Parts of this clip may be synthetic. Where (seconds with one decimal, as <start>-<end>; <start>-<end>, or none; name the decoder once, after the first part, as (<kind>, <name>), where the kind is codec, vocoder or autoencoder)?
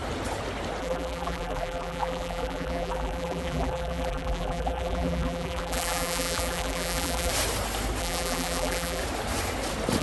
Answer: 0.8-7.3 (vocoder, BigVGAN v2); 8.0-9.0